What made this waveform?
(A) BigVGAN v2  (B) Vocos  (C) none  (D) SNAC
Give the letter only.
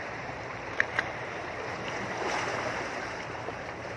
A